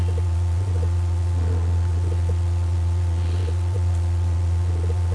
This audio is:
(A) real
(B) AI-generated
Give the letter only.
B